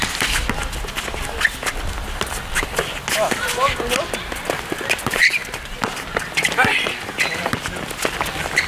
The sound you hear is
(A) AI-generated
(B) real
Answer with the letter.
B